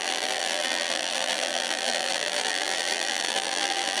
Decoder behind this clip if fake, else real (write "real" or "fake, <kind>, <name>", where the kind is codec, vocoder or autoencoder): fake, vocoder, BigVGAN v2